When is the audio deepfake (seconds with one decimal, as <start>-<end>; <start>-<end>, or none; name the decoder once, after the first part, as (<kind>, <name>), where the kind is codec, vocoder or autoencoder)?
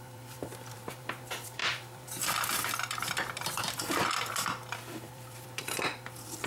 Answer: 0.0-6.5 (vocoder, BigVGAN v2)